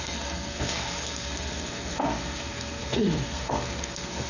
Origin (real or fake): fake